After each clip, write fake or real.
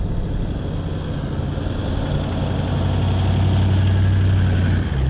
real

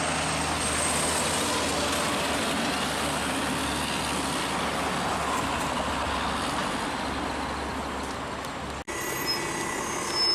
real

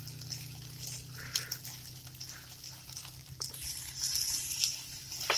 real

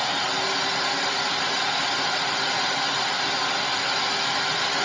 real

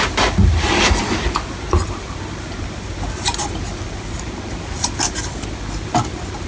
real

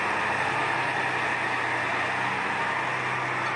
real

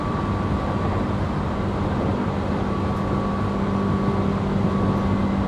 real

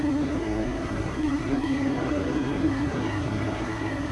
fake